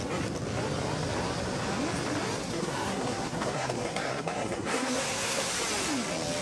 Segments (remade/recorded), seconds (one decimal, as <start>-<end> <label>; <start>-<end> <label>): 0.0-2.4 recorded; 2.4-5.5 remade; 5.5-6.4 recorded